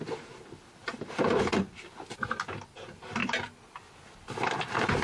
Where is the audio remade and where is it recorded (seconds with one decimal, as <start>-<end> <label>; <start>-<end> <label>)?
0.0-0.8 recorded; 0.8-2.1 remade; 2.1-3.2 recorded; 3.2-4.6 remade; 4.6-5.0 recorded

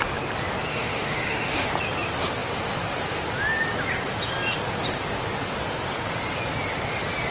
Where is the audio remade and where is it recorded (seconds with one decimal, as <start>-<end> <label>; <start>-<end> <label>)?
0.0-0.7 recorded; 0.7-1.7 remade; 1.7-7.3 recorded

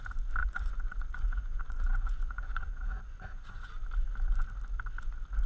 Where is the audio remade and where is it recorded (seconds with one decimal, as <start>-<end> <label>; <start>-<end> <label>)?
0.0-0.4 recorded; 0.4-3.7 remade; 3.7-5.5 recorded

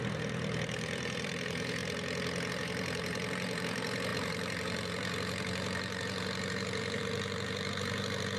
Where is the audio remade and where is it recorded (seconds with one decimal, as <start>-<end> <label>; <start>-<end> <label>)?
0.0-1.8 remade; 1.8-2.5 recorded; 2.5-8.4 remade

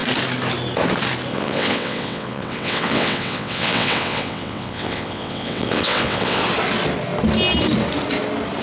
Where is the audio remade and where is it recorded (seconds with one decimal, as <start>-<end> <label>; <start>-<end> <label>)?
0.0-1.3 recorded; 1.3-6.4 remade; 6.4-8.6 recorded

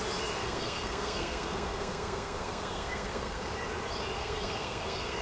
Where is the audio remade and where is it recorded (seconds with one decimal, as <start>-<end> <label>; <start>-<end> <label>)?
0.0-0.4 recorded; 0.4-3.5 remade; 3.5-4.2 recorded; 4.2-5.2 remade

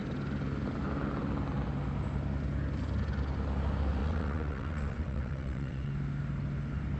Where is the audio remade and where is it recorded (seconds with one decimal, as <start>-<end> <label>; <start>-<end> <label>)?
0.0-4.0 recorded; 4.0-5.9 remade; 5.9-7.0 recorded

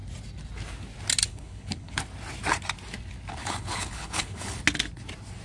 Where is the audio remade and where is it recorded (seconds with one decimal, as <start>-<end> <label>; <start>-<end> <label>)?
0.0-1.3 recorded; 1.3-2.0 remade; 2.0-3.4 recorded; 3.4-4.6 remade; 4.6-5.4 recorded